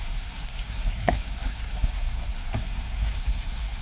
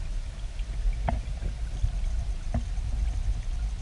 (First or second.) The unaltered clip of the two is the second